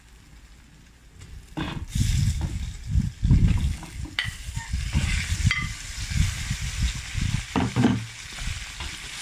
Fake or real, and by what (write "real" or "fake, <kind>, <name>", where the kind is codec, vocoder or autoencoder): real